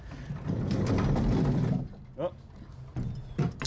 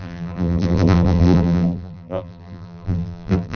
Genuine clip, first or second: first